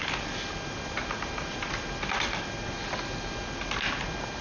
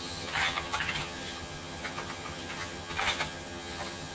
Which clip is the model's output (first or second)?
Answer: second